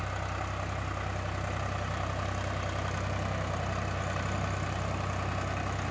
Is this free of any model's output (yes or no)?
yes